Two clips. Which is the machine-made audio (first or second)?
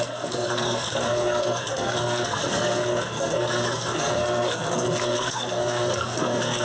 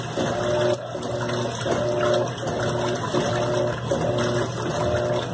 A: first